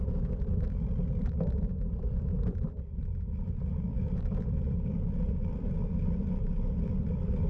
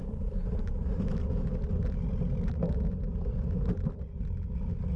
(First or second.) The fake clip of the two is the first